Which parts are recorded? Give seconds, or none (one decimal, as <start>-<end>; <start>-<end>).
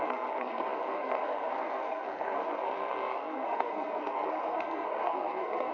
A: none